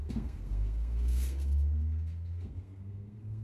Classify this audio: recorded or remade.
remade